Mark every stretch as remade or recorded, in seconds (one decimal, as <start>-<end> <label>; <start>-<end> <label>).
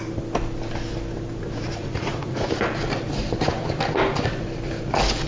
0.0-1.8 recorded; 1.8-2.5 remade; 2.5-5.3 recorded